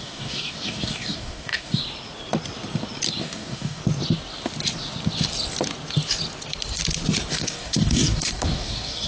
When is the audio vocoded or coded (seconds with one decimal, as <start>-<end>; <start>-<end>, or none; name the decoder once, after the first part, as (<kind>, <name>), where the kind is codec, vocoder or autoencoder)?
0.0-1.8 (codec, DAC); 3.2-3.8; 7.3-9.1